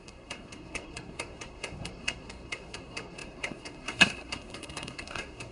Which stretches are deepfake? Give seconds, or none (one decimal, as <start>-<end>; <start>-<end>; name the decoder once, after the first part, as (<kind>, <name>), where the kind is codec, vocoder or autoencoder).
0.0-5.5 (codec, SNAC)

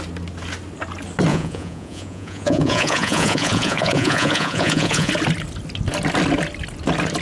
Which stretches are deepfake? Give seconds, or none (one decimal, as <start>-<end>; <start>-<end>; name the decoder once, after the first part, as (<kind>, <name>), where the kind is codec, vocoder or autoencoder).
1.3-5.1 (vocoder, Vocos)

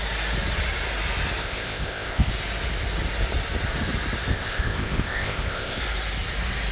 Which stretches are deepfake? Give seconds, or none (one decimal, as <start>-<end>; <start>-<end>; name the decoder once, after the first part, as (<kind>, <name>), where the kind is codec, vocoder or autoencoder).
1.4-2.3 (codec, ZipCodec); 4.3-5.8

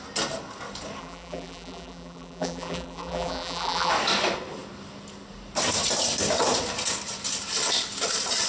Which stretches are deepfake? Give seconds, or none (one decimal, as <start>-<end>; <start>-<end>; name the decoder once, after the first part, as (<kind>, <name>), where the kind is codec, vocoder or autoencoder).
1.0-3.9 (vocoder, BigVGAN v2)